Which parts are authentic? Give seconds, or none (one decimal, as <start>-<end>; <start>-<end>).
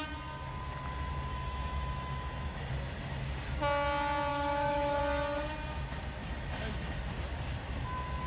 0.0-1.3; 2.7-4.3; 5.0-6.2; 7.0-8.3